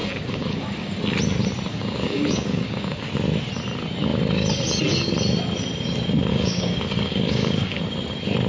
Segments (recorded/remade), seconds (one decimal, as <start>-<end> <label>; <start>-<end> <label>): 0.0-1.0 remade; 1.0-1.7 recorded; 1.7-3.1 remade; 3.1-6.3 recorded; 6.3-7.8 remade; 7.8-8.5 recorded